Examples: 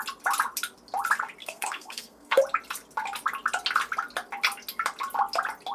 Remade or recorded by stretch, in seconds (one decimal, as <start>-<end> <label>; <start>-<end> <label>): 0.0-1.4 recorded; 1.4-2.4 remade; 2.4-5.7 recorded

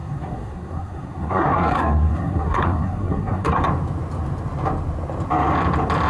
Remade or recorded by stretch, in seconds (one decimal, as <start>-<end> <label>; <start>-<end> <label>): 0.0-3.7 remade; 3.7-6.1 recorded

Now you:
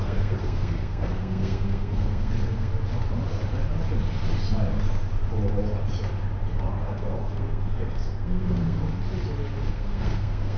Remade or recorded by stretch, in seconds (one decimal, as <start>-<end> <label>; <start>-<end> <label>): 0.0-2.7 remade; 2.7-6.8 recorded; 6.8-8.8 remade; 8.8-9.7 recorded; 9.7-10.6 remade

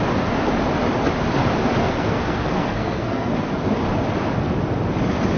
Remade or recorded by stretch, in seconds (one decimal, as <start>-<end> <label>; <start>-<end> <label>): 0.0-1.8 recorded; 1.8-3.3 remade; 3.3-5.4 recorded

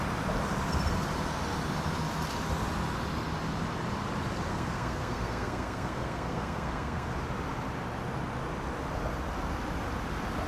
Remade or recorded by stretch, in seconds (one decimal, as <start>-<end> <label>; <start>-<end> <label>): 0.0-4.5 recorded; 4.5-7.1 remade; 7.1-10.5 recorded

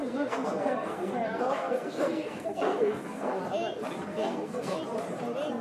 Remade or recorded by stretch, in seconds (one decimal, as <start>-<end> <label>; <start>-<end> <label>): 0.0-3.4 remade; 3.4-4.1 recorded; 4.1-4.8 remade; 4.8-5.6 recorded

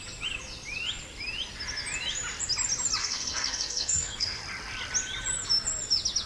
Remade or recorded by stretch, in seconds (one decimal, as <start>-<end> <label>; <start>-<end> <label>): 0.0-3.0 recorded; 3.0-4.4 remade; 4.4-6.3 recorded

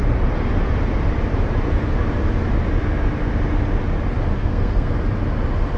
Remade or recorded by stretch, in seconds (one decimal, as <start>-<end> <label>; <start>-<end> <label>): 0.0-4.3 recorded; 4.3-4.9 remade; 4.9-5.8 recorded